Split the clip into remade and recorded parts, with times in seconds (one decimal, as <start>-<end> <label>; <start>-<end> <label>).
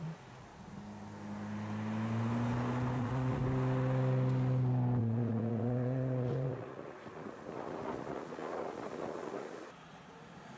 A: 0.0-0.5 remade; 0.5-3.0 recorded; 3.0-3.4 remade; 3.4-5.0 recorded; 5.0-10.6 remade